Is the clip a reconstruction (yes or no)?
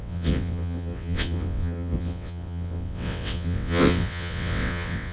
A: yes